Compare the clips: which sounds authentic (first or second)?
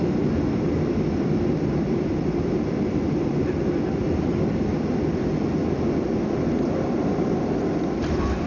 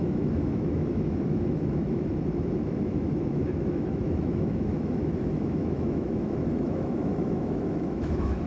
first